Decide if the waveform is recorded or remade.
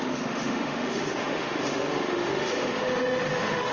remade